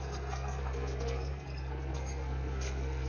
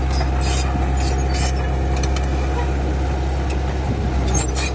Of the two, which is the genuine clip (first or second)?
second